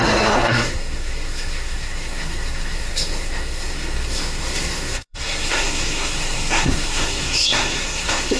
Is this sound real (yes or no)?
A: no